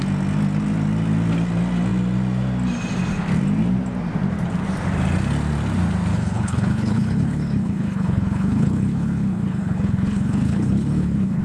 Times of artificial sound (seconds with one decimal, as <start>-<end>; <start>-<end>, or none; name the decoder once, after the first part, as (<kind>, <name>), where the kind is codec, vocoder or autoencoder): 6.1-11.4 (codec, HILCodec)